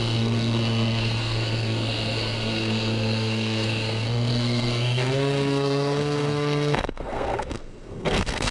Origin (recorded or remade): remade